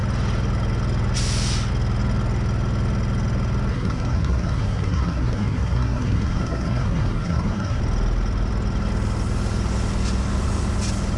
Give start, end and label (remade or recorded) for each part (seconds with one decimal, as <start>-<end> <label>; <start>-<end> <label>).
0.0-3.7 recorded; 3.7-7.8 remade; 7.8-11.2 recorded